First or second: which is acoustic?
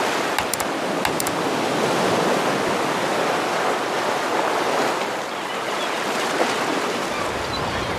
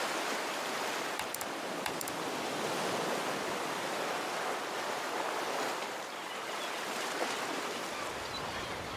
first